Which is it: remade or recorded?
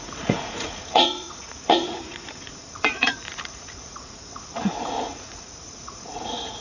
remade